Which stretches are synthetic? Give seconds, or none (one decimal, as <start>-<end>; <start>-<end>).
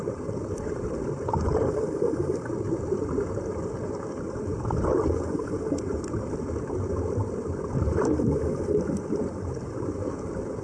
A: 0.0-4.5; 6.6-10.6